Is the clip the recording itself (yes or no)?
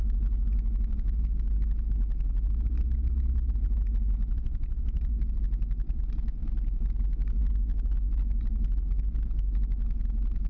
yes